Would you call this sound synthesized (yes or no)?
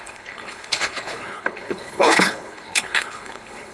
yes